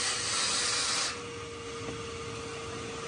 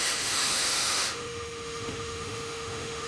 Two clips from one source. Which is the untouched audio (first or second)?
first